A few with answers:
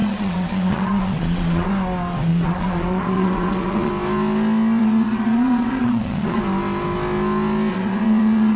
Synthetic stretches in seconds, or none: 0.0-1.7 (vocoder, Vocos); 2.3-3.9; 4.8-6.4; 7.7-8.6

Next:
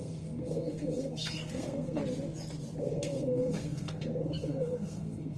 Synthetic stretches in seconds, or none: 0.0-2.0 (codec, SNAC); 2.8-5.4

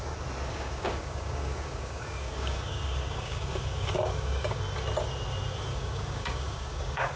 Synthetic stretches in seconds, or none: 0.5-4.6 (codec, DAC); 5.7-7.2

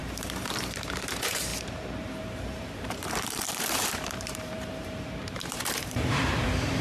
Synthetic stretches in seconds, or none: 0.0-6.8 (vocoder, BigVGAN v2)

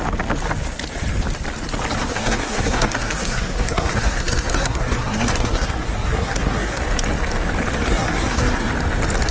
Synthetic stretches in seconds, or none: 2.0-6.8 (codec, SNAC); 7.9-8.7

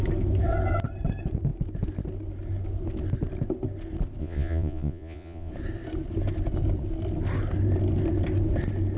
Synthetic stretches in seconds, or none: 4.2-5.5 (vocoder, Vocos)

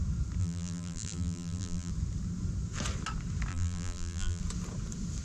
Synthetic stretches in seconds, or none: 0.4-1.9 (vocoder, BigVGAN v2); 3.5-4.4